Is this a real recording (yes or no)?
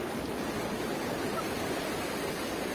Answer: no